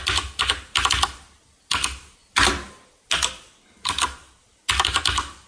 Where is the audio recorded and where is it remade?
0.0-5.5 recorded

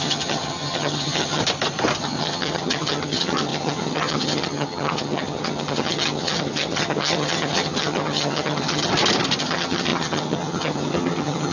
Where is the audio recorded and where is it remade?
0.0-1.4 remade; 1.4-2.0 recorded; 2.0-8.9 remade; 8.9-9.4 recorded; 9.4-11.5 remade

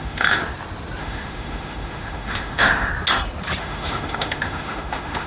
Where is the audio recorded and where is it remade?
0.0-0.4 remade; 0.4-1.0 recorded; 1.0-2.9 remade; 2.9-3.6 recorded; 3.6-5.3 remade

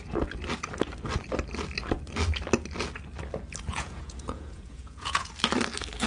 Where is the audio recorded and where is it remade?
0.0-3.7 recorded; 3.7-5.3 remade; 5.3-6.1 recorded

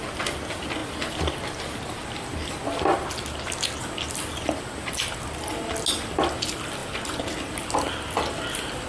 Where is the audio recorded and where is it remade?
0.0-8.9 recorded

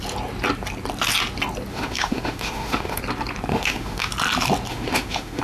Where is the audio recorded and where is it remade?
0.0-1.7 recorded; 1.7-3.0 remade; 3.0-3.5 recorded; 3.5-4.1 remade; 4.1-4.7 recorded; 4.7-5.4 remade

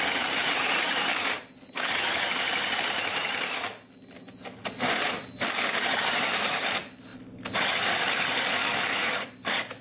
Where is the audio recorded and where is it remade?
0.0-8.6 recorded; 8.6-9.2 remade; 9.2-9.8 recorded

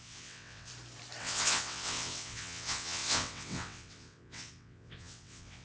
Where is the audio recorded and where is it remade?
0.0-0.7 remade; 0.7-1.2 recorded; 1.2-5.6 remade